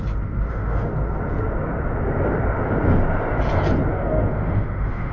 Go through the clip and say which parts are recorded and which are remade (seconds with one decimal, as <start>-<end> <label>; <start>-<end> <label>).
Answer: 0.0-0.5 recorded; 0.5-0.9 remade; 0.9-3.9 recorded; 3.9-5.1 remade